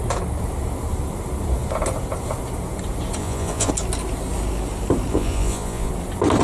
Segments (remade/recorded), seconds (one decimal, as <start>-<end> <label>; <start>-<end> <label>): 0.0-3.2 recorded; 3.2-3.7 remade; 3.7-5.1 recorded; 5.1-5.9 remade; 5.9-6.4 recorded

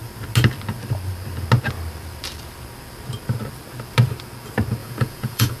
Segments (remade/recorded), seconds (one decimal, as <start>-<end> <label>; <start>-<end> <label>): 0.0-4.8 recorded; 4.8-5.6 remade

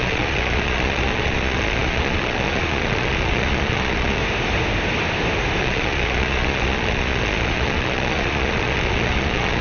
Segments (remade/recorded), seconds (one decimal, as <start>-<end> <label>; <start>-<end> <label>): 0.0-4.2 remade; 4.2-5.6 recorded; 5.6-9.6 remade

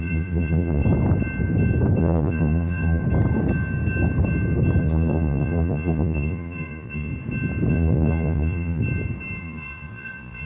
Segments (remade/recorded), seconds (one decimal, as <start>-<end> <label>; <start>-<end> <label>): 0.0-0.8 remade; 0.8-2.0 recorded; 2.0-3.0 remade; 3.0-4.8 recorded; 4.8-7.1 remade; 7.1-7.7 recorded; 7.7-8.8 remade; 8.8-9.4 recorded; 9.4-10.5 remade

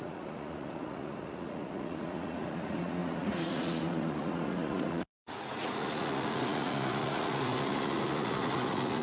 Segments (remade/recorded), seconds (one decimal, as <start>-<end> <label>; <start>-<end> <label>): 0.0-9.0 remade

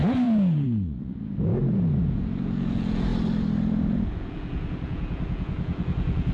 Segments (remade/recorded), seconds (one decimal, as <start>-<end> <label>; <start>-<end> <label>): 0.0-1.5 remade; 1.5-2.0 recorded; 2.0-3.1 remade; 3.1-3.8 recorded; 3.8-6.3 remade